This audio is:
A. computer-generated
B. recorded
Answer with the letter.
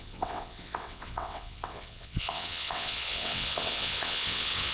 A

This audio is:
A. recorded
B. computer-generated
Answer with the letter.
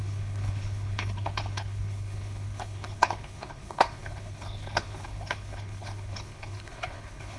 B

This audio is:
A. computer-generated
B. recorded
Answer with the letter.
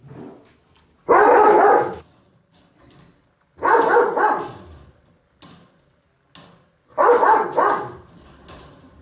B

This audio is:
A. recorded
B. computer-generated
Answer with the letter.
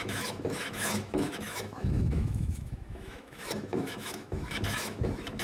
B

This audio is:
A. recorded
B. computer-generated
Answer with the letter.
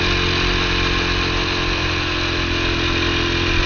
A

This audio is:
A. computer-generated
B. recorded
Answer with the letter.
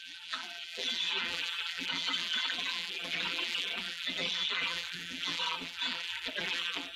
A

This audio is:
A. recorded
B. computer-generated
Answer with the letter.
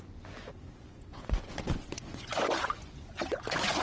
B